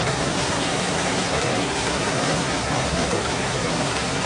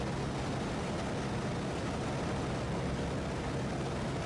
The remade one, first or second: first